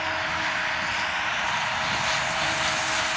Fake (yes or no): no